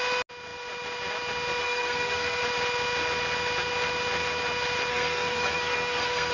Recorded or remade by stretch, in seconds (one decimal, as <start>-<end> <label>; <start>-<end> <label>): 0.0-1.6 recorded; 1.6-2.4 remade; 2.4-4.9 recorded; 4.9-6.3 remade